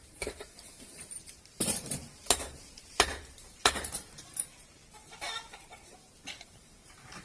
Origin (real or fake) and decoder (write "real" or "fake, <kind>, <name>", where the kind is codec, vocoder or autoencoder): fake, vocoder, BigVGAN v2